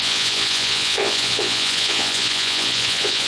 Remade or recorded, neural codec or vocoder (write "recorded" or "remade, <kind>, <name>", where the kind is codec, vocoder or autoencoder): remade, vocoder, Vocos